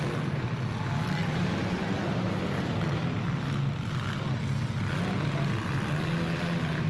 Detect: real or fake real